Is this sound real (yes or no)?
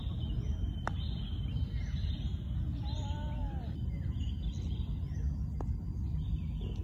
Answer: yes